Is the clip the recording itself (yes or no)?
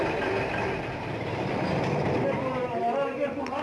no